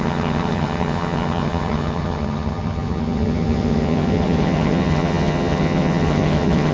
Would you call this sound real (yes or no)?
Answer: no